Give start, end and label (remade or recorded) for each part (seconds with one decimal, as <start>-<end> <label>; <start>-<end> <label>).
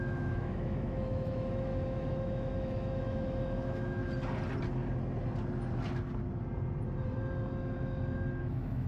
0.0-4.0 remade; 4.0-8.4 recorded; 8.4-8.9 remade